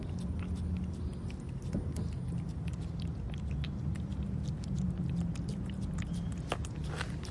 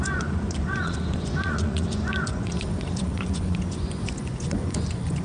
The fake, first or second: second